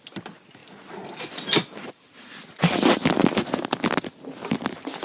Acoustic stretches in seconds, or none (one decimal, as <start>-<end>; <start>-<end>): 0.0-5.0